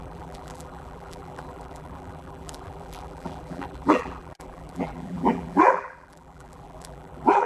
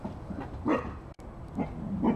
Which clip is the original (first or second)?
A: second